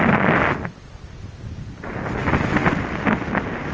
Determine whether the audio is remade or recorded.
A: recorded